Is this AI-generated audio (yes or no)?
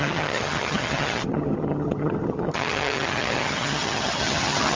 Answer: yes